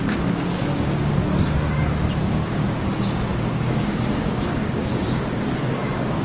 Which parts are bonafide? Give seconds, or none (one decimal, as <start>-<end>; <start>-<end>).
1.2-2.3